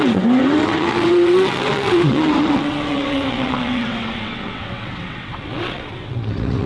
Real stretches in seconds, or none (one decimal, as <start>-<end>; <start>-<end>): none